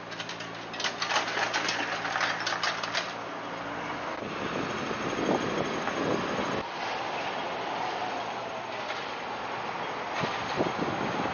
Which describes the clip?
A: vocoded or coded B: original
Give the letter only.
B